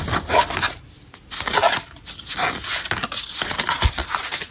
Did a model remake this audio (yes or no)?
no